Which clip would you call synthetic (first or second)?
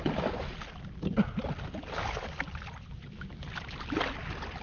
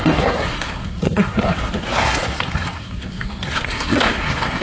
second